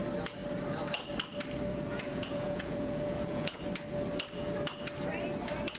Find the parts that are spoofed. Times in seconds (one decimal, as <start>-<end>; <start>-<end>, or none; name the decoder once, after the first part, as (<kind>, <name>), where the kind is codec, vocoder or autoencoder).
1.7-3.6 (vocoder, Vocos)